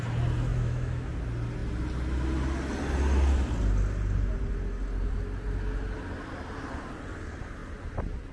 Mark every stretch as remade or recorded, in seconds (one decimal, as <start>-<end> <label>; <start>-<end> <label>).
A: 0.0-0.5 recorded; 0.5-1.1 remade; 1.1-8.3 recorded